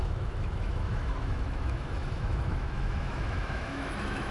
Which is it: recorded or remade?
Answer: remade